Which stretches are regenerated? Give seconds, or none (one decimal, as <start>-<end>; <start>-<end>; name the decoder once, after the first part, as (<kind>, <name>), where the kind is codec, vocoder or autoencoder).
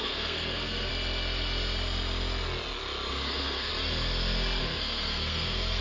0.0-0.9 (codec, SNAC); 3.1-3.7; 4.6-5.8